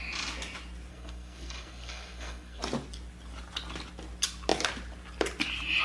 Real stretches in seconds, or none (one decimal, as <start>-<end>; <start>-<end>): 0.0-0.9; 2.6-5.8